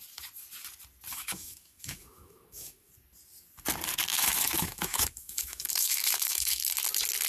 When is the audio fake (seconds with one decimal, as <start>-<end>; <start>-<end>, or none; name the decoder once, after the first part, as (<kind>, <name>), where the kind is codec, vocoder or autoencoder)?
1.1-2.9 (autoencoder, DAC-VAE); 4.1-6.6